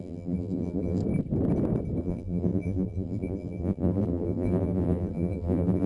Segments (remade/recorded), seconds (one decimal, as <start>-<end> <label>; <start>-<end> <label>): 0.0-1.0 remade; 1.0-2.0 recorded; 2.0-5.9 remade